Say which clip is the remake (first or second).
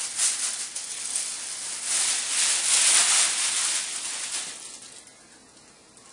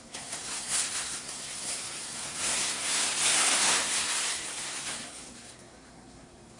second